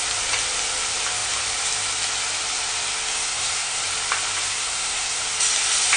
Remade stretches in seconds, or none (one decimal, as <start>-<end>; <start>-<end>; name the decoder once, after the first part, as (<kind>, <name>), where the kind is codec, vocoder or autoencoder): 3.1-3.8 (codec, SNAC); 4.5-5.2